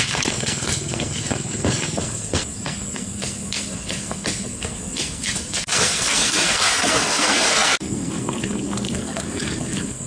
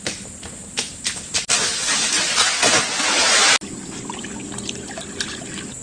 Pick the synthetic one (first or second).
first